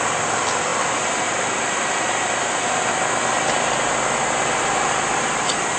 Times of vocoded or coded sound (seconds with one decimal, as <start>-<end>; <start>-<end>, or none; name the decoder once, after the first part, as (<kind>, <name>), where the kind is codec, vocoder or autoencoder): none